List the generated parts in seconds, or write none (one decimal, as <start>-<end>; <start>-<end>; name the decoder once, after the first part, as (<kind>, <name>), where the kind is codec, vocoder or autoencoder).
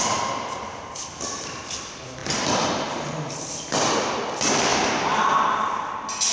2.2-3.3 (vocoder, BigVGAN v2); 4.7-5.6